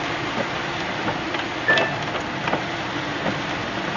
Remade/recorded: recorded